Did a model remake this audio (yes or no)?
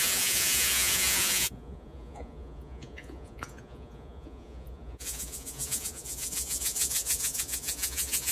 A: yes